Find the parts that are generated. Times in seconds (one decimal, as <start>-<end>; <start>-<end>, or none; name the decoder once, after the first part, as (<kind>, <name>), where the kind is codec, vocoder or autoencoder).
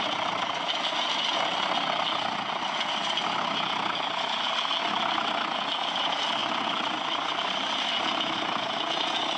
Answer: none